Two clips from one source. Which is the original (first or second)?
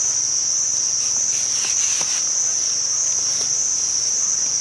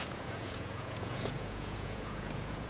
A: first